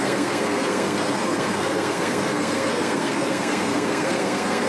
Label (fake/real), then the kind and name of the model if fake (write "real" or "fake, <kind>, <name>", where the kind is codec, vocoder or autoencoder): fake, codec, SNAC